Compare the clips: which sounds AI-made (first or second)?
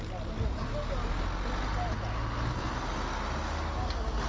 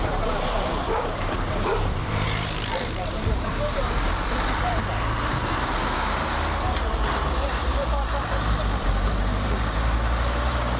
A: second